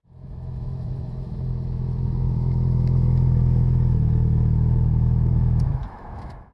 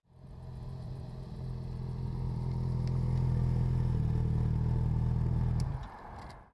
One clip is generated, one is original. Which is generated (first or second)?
first